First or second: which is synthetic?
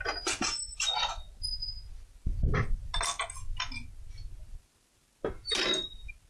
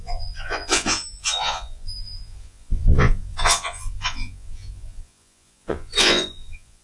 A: second